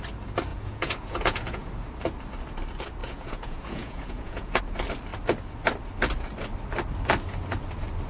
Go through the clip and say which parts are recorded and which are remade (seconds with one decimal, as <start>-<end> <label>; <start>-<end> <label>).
0.0-0.5 recorded; 0.5-1.7 remade; 1.7-3.0 recorded; 3.0-4.6 remade; 4.6-8.1 recorded